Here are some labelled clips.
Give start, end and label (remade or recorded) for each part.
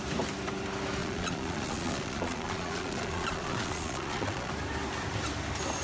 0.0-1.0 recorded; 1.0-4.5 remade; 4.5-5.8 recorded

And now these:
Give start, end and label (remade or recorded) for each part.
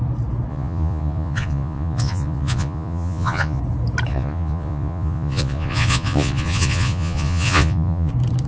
0.0-0.5 recorded; 0.5-3.6 remade; 3.6-4.1 recorded; 4.1-8.1 remade; 8.1-8.5 recorded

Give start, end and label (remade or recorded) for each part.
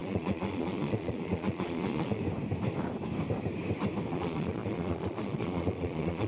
0.0-2.2 remade; 2.2-4.1 recorded; 4.1-6.3 remade